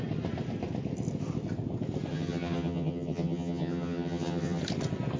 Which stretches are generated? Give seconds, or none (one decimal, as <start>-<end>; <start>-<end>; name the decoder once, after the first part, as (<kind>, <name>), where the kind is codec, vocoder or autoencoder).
2.1-4.6 (vocoder, HiFi-GAN)